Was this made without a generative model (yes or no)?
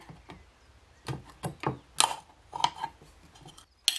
yes